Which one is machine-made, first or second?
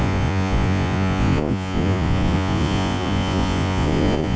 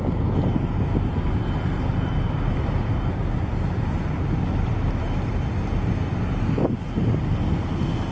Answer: first